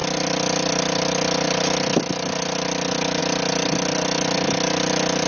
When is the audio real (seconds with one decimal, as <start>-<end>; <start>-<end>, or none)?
0.0-5.3